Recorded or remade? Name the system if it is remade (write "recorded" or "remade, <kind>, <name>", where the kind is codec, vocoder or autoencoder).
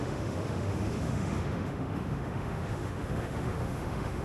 remade, autoencoder, DAC-VAE